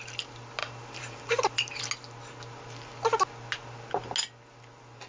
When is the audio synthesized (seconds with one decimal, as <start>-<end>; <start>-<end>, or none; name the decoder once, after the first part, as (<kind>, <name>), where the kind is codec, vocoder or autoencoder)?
0.6-1.8 (vocoder, BigVGAN v2)